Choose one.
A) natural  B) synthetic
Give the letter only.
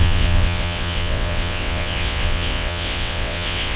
B